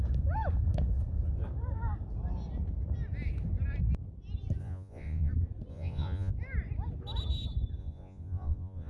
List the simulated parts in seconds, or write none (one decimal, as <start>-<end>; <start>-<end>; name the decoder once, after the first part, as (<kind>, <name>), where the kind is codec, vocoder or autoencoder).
4.6-5.3 (vocoder, Vocos); 5.7-6.3; 7.8-8.9